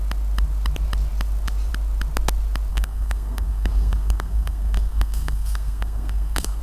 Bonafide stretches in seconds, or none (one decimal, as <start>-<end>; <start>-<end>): 0.0-2.7

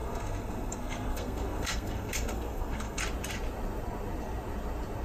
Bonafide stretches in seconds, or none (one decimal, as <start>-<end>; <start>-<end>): 3.0-5.0